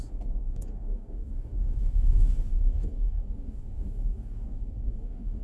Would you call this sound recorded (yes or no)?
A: no